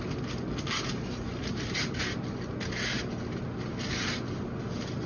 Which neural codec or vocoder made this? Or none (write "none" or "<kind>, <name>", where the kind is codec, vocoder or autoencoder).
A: none